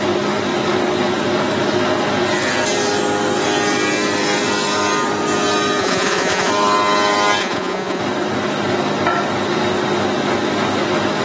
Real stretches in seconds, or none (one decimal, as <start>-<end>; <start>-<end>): 0.0-5.8; 6.5-7.4; 8.0-11.2

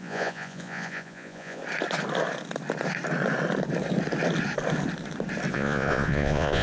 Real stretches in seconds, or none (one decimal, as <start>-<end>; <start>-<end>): 1.6-5.5

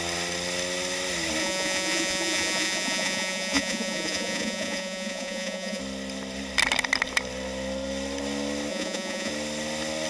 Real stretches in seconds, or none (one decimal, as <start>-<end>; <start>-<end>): 0.0-1.4; 5.8-8.7; 9.3-10.1

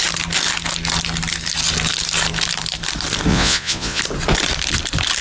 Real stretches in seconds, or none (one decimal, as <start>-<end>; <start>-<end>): 0.0-3.3; 4.0-5.2

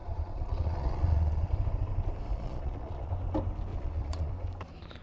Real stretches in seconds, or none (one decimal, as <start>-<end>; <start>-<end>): 1.5-2.3; 3.1-3.7; 4.3-5.0

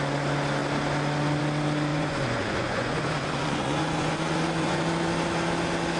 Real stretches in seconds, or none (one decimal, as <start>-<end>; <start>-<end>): 0.0-1.9; 4.8-6.0